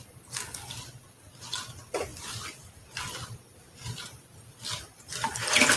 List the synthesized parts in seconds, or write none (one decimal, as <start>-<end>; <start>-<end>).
1.0-1.7; 3.5-5.8